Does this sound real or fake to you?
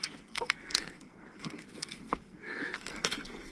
fake